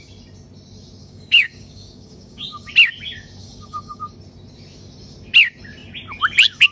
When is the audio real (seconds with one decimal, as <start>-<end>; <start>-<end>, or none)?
0.0-1.0; 2.7-3.4; 4.1-6.7

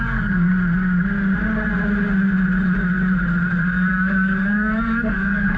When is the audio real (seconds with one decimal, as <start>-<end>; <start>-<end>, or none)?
0.5-3.9